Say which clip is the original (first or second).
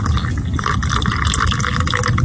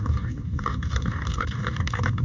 first